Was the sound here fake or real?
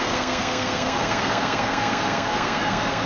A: fake